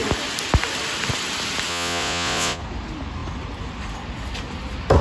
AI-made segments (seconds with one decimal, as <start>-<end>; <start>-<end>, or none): 1.7-2.6